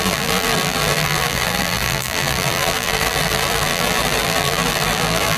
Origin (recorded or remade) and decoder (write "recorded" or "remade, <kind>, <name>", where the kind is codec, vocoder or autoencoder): remade, vocoder, BigVGAN v2